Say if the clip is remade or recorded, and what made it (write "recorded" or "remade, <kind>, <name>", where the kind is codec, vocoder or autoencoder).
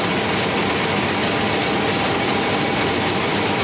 recorded